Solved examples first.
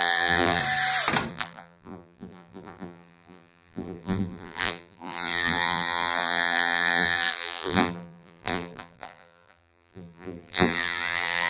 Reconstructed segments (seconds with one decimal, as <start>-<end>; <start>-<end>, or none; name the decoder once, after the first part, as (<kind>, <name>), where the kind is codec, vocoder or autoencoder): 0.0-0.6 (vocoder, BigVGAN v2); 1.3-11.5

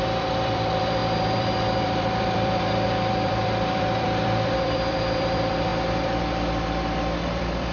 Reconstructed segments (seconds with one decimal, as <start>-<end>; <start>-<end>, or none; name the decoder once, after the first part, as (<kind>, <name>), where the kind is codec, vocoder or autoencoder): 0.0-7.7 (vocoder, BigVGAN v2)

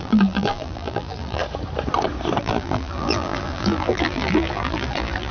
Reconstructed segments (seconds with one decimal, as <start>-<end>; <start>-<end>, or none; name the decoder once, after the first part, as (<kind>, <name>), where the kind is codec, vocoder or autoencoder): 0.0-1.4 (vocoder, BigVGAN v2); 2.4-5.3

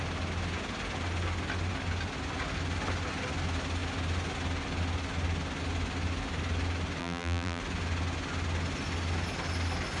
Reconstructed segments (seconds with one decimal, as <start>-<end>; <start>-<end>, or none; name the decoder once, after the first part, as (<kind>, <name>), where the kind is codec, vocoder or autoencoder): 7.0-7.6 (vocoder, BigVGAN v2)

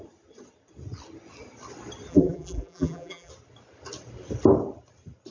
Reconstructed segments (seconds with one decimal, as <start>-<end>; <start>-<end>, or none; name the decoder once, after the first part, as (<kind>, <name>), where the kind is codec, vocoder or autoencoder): 2.1-3.3 (vocoder, BigVGAN v2)

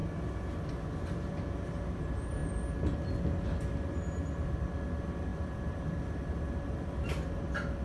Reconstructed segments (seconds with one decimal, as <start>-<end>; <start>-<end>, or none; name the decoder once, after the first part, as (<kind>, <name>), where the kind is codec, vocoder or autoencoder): 5.3-5.9 (vocoder, BigVGAN v2)

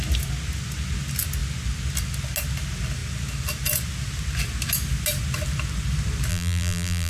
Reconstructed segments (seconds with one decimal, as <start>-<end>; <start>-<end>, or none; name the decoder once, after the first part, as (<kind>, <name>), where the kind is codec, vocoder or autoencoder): 6.3-7.1 (vocoder, BigVGAN v2)